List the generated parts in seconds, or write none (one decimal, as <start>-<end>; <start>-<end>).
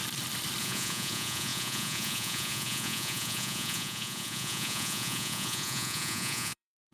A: 0.6-6.9